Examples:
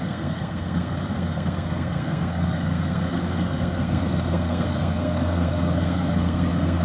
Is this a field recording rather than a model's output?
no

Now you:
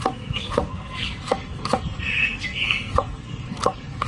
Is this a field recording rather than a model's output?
no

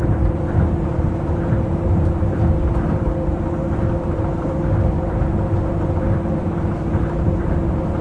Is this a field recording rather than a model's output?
no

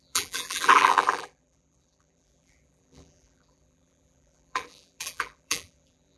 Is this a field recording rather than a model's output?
no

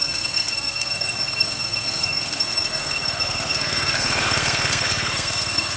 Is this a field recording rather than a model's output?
no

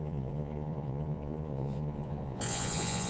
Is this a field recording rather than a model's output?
no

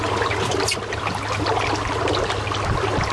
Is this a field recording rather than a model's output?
yes